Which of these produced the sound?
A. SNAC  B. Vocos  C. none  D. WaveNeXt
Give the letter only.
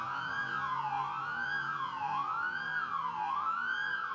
C